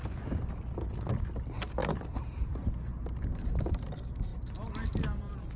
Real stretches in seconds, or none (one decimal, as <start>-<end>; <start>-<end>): 0.0-5.6